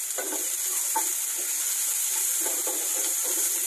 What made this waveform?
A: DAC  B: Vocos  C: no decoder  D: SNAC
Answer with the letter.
C